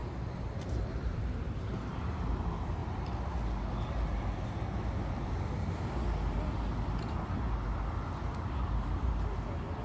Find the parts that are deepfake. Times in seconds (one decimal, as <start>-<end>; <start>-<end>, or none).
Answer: 0.0-2.3